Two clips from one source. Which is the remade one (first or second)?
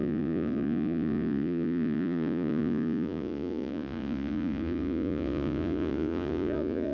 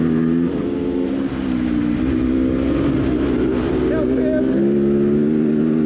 first